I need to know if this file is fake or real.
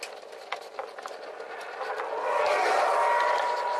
real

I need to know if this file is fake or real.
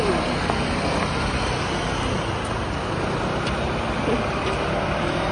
real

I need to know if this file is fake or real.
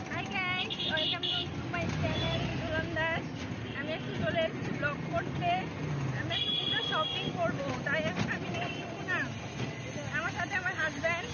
real